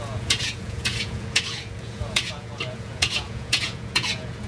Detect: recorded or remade remade